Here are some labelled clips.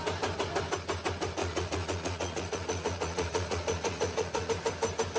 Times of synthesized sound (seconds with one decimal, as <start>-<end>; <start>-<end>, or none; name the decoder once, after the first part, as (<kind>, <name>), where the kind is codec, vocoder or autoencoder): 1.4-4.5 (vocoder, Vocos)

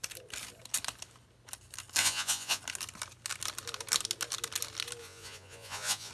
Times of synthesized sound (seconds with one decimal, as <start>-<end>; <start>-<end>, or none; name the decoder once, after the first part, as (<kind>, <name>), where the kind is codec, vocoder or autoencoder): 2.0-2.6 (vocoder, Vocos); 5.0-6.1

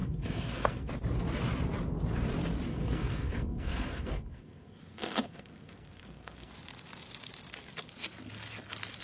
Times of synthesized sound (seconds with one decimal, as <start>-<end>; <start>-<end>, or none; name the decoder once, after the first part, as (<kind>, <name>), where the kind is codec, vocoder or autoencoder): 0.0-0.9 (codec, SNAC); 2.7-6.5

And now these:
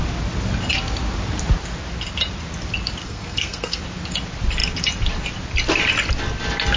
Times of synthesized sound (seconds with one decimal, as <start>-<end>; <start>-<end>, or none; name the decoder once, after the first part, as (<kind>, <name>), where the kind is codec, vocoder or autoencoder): 3.0-3.8 (codec, SNAC)

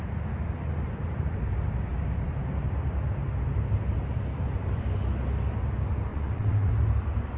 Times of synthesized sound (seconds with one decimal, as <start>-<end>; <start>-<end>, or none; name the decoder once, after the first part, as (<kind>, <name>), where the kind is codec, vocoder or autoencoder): 6.1-6.7 (vocoder, WaveNeXt)

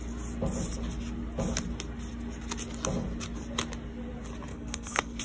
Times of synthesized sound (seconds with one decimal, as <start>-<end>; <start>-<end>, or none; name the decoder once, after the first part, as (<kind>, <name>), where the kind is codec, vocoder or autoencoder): 4.5-5.2 (codec, SNAC)